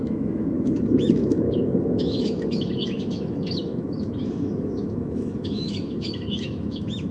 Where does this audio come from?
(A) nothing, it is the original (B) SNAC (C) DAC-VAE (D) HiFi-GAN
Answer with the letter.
C